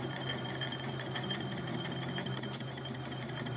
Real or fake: fake